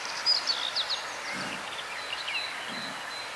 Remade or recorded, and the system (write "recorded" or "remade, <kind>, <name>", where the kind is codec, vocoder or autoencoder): recorded